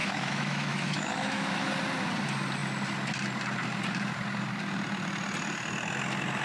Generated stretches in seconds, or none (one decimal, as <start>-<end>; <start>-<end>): 0.0-1.7